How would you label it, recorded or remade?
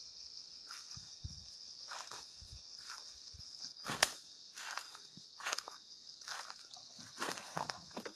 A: remade